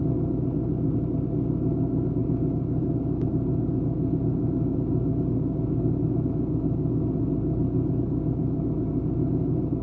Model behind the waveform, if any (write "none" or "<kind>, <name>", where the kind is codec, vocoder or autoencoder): none